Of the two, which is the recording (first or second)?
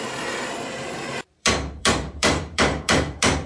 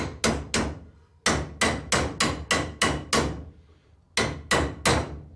second